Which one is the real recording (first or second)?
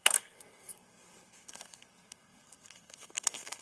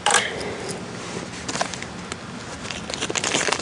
second